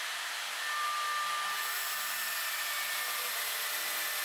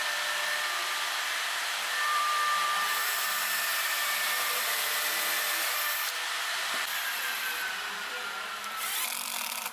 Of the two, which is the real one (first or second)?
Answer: first